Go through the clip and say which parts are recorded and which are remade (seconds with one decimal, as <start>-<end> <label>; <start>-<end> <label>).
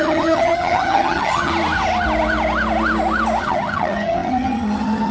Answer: 0.0-1.5 remade; 1.5-3.4 recorded; 3.4-5.1 remade